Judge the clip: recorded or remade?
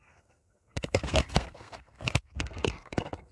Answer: remade